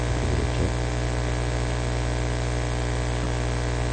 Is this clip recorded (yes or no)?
yes